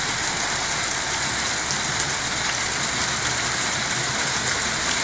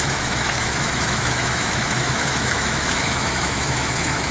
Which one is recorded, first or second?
first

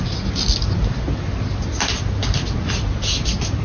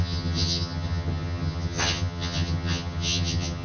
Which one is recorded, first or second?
first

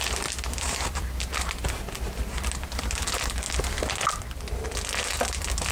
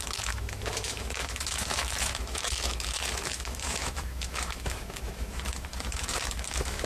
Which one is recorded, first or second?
first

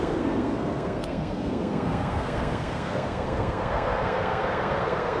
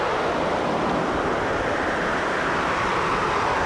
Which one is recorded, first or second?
second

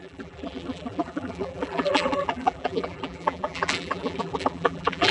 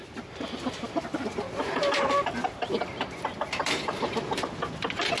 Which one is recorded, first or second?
second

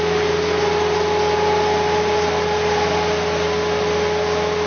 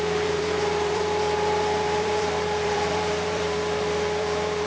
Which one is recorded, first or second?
first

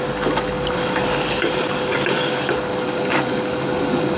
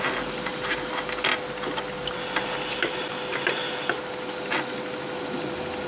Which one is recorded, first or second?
second